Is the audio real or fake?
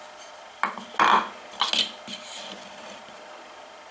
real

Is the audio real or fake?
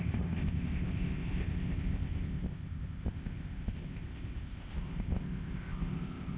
fake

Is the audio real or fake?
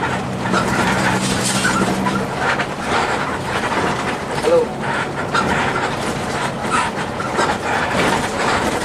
fake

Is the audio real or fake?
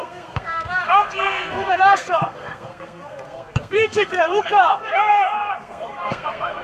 fake